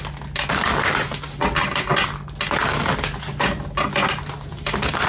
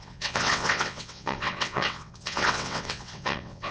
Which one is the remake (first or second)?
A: second